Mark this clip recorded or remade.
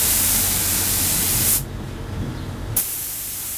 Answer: remade